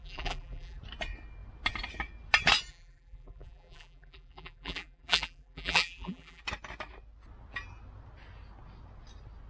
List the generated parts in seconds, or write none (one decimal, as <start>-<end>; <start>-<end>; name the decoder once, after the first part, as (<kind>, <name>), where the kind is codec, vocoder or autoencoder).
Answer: 0.0-0.8 (vocoder, BigVGAN v2); 2.7-6.4